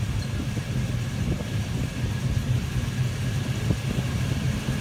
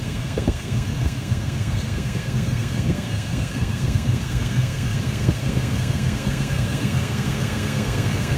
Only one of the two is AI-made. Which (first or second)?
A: second